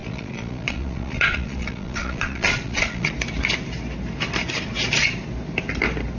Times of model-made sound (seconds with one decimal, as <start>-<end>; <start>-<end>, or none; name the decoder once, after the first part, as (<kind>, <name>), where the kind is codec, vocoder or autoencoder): 0.0-3.1 (vocoder, Vocos)